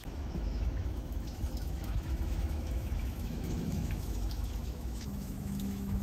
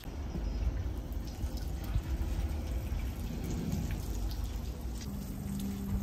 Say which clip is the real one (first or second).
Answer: second